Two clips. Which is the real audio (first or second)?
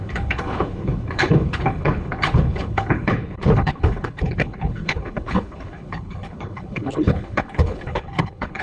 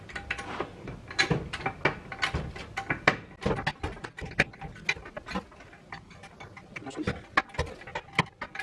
second